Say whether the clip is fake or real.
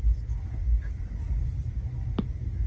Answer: real